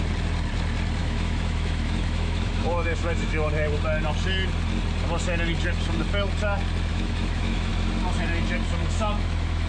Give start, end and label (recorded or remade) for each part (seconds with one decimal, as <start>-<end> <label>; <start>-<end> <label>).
0.0-1.0 recorded; 1.0-3.7 remade; 3.7-6.9 recorded; 6.9-7.7 remade; 7.7-8.8 recorded; 8.8-9.7 remade